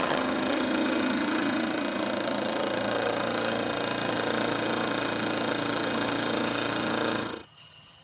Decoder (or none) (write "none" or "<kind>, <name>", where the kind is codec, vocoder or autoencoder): vocoder, HiFi-GAN